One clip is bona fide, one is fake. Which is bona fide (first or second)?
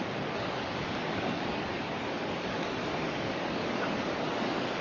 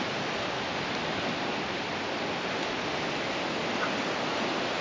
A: second